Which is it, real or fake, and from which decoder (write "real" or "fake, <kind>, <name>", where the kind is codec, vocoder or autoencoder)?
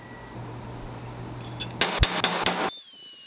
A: real